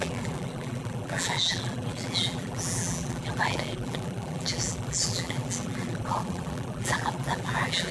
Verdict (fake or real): fake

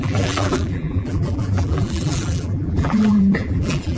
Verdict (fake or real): fake